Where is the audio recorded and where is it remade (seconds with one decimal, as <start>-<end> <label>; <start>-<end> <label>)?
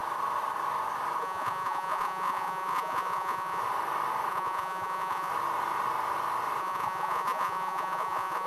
0.0-1.2 recorded; 1.2-3.6 remade; 3.6-4.3 recorded; 4.3-5.3 remade; 5.3-6.6 recorded; 6.6-8.5 remade